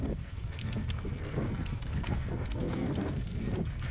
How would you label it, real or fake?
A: fake